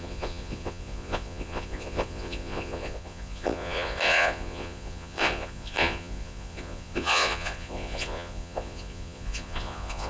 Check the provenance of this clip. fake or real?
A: fake